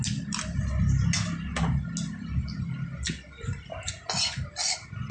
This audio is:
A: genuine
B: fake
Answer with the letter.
A